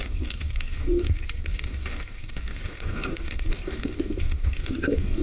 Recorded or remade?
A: remade